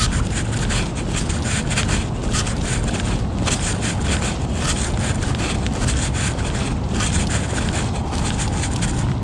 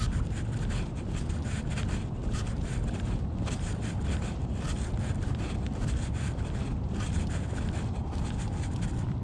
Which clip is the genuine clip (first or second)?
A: first